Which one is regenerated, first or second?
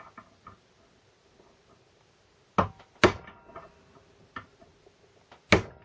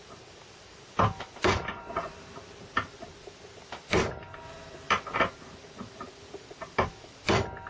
second